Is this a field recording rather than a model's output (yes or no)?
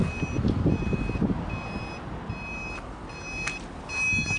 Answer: yes